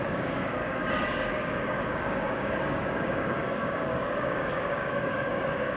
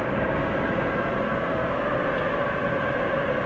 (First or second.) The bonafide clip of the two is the second